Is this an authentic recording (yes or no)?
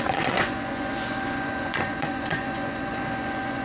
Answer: no